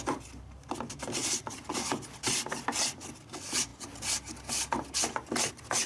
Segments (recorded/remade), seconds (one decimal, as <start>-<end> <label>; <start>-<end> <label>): 0.0-5.9 recorded